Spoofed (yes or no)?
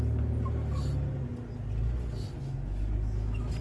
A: no